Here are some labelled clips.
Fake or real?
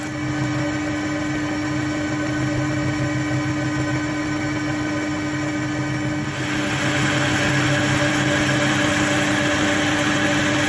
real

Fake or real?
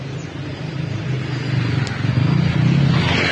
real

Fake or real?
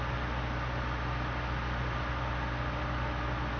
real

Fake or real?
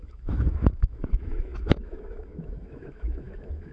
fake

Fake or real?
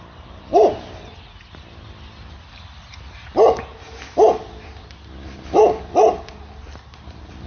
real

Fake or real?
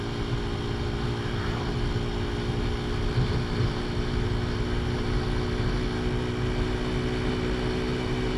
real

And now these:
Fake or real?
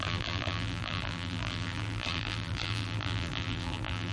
fake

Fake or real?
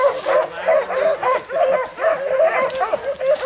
real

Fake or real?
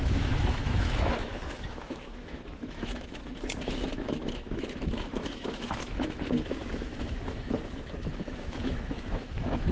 fake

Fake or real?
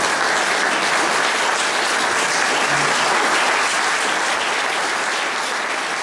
real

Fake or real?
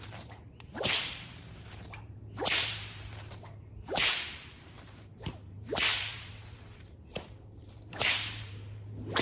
fake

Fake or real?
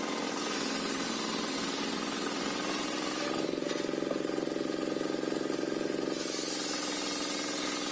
real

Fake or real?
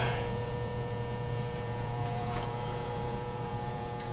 fake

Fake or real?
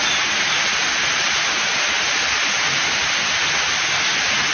real